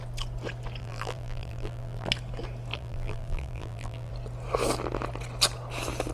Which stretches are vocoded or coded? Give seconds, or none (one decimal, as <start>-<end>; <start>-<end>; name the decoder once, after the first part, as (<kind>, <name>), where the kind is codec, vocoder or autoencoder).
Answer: 0.8-2.1 (vocoder, BigVGAN v2); 2.7-4.1